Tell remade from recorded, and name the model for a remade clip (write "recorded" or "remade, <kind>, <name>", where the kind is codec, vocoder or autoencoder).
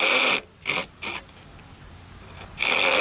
recorded